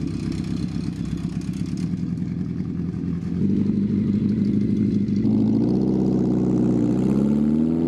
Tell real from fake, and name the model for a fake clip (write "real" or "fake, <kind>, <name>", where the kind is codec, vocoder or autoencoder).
real